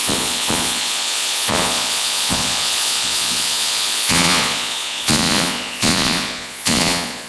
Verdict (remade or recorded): remade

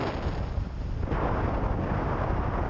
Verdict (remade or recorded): recorded